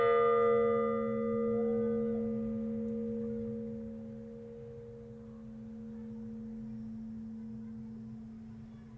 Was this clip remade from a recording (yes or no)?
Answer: no